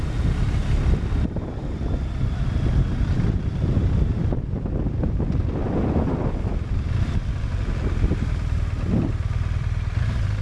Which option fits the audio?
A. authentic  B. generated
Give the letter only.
B